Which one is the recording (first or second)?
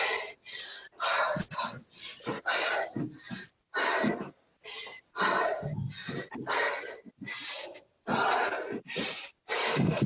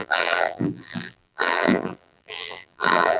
first